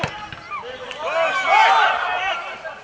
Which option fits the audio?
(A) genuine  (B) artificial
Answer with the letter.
A